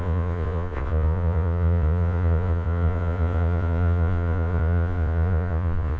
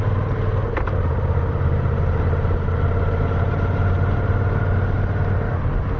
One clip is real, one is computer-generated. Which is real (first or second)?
second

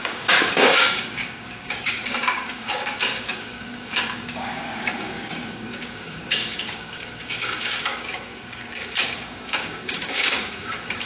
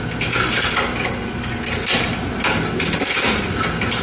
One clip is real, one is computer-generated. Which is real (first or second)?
second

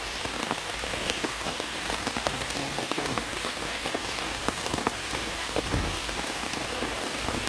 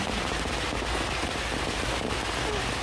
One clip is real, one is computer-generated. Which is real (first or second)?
second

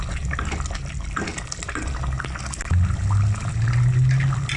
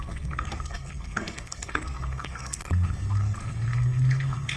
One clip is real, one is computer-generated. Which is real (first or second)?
first